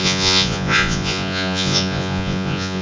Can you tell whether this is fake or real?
fake